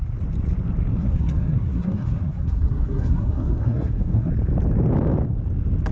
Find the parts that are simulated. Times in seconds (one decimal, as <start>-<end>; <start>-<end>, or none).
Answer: 0.9-4.3